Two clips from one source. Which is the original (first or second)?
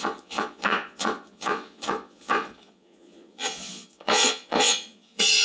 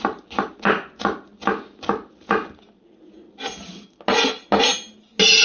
second